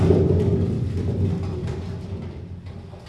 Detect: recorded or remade recorded